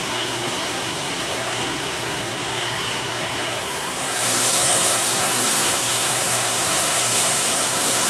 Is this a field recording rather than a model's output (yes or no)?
no